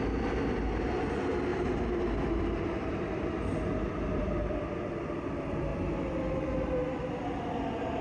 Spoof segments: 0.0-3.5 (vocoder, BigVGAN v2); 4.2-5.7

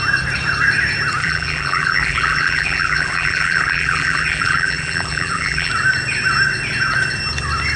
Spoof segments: 1.2-5.7 (vocoder, BigVGAN v2)

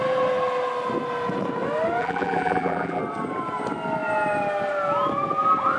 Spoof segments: 2.0-3.0 (vocoder, BigVGAN v2)